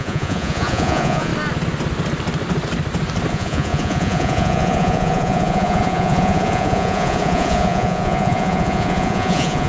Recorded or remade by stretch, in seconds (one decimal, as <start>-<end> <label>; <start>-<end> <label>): 0.0-1.3 remade; 1.3-3.3 recorded; 3.3-9.7 remade